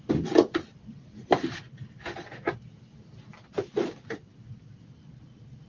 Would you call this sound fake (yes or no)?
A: no